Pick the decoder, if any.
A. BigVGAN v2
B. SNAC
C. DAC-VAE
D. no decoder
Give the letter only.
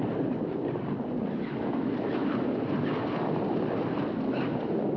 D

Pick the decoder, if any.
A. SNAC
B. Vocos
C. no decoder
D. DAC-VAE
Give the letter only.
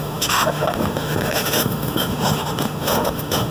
D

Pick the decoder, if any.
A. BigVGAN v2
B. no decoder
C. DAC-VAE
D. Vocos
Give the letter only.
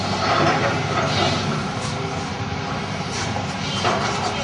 A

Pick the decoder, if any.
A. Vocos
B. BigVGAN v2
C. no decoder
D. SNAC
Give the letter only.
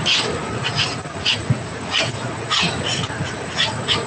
A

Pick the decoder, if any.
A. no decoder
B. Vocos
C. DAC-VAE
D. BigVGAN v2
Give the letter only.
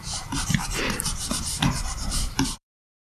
D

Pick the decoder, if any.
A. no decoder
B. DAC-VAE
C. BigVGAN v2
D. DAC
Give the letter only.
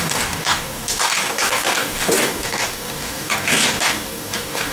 D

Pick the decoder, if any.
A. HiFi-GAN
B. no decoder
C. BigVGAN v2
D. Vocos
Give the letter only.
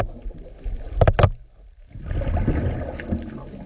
B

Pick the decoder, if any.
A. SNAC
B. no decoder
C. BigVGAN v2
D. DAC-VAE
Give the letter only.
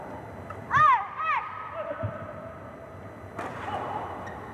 B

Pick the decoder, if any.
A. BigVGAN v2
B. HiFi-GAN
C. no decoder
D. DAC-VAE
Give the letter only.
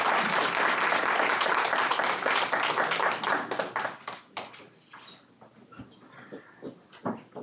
C